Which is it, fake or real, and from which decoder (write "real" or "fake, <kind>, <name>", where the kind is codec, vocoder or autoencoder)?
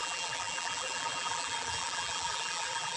fake, vocoder, BigVGAN v2